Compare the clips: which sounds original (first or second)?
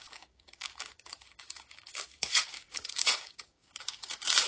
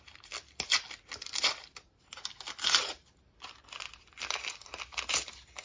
second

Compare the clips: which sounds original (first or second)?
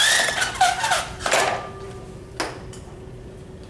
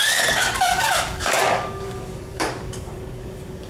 first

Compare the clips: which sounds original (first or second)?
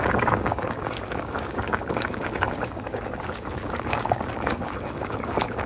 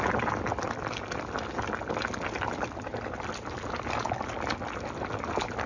second